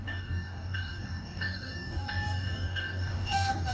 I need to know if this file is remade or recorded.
remade